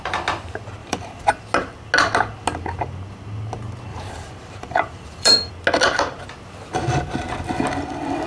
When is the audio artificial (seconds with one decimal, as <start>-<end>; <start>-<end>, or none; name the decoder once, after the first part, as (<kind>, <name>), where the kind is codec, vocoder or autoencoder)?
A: 0.8-1.3 (vocoder, BigVGAN v2); 3.9-5.5